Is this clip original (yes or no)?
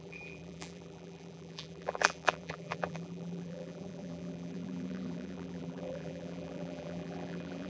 no